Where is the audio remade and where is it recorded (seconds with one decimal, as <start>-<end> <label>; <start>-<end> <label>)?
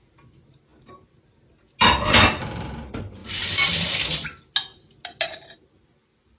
0.0-3.2 recorded; 3.2-4.0 remade; 4.0-6.4 recorded